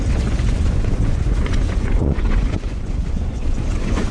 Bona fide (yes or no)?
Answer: no